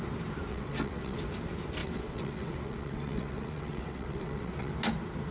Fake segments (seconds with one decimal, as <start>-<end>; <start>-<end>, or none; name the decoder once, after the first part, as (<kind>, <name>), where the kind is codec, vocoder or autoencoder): 0.5-1.2 (vocoder, WaveNeXt); 1.8-4.7